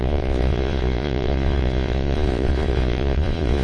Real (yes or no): no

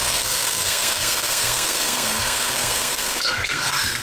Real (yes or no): no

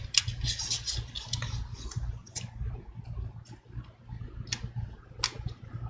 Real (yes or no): yes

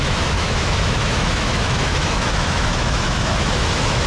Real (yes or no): no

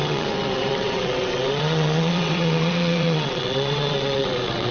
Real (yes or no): no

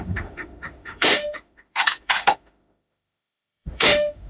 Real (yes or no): no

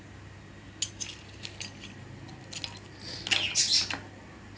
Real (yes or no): yes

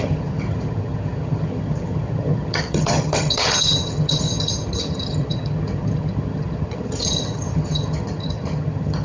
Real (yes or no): no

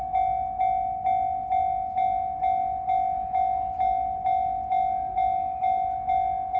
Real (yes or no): yes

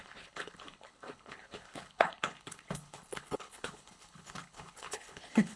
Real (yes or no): no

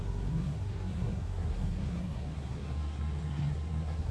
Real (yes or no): no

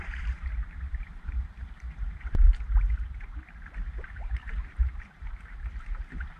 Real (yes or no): no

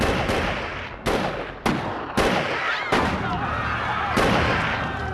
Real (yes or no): yes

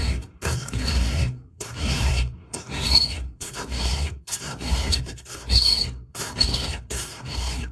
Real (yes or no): no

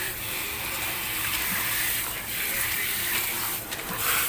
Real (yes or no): no